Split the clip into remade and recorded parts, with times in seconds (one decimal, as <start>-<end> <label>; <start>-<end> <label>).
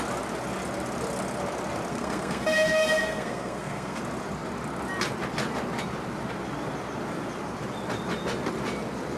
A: 0.0-1.9 recorded; 1.9-4.0 remade; 4.0-9.2 recorded